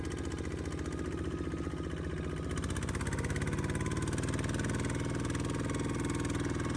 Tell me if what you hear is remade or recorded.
recorded